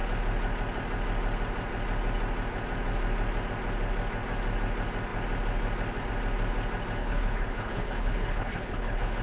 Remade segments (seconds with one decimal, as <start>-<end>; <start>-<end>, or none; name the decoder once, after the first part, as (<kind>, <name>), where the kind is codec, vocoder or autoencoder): 7.0-9.2 (codec, HILCodec)